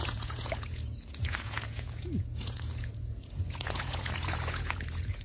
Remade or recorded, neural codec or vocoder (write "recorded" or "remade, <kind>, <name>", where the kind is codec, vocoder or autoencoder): remade, vocoder, Vocos